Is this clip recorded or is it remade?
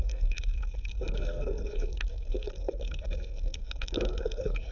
remade